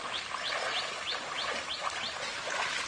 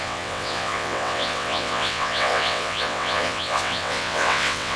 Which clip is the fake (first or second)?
second